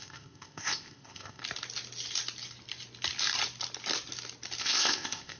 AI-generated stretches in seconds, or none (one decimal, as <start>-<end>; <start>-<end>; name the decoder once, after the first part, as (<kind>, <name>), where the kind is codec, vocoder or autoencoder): 0.0-1.4 (codec, ZipCodec); 4.6-5.4